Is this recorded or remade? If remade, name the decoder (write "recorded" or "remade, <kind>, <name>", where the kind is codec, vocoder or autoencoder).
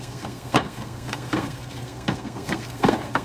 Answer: remade, codec, SNAC